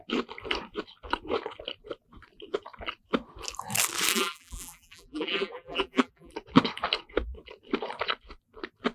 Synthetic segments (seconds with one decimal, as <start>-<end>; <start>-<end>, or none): 4.1-6.3